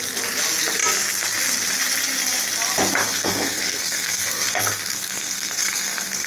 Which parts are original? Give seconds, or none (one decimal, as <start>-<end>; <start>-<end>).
0.0-3.0